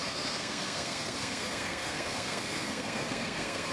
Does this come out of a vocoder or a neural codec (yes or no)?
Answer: yes